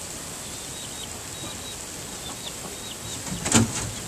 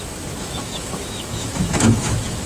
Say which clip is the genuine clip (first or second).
first